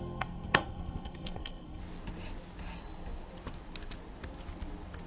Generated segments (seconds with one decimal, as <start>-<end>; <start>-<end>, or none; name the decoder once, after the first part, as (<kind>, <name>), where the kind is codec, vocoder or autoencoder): 0.0-1.8 (codec, SNAC)